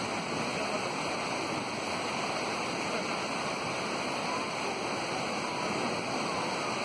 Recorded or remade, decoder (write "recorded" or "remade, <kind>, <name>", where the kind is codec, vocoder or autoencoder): recorded